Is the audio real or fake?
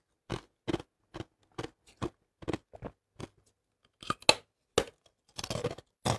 real